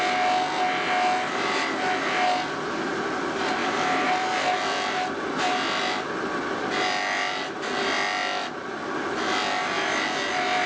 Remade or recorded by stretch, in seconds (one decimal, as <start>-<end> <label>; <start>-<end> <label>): 0.0-10.7 recorded